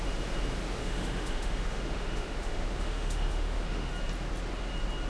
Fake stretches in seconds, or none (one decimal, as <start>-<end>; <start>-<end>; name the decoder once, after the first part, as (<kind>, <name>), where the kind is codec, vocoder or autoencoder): 0.8-3.9 (autoencoder, DAC-VAE)